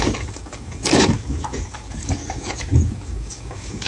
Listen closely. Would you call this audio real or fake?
fake